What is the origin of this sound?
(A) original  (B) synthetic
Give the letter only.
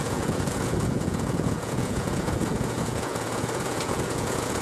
B